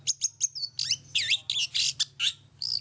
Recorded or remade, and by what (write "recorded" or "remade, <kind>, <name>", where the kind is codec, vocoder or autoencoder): recorded